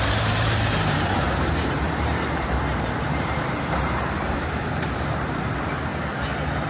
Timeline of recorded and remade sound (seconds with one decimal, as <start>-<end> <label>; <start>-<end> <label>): 0.0-5.9 remade; 5.9-6.7 recorded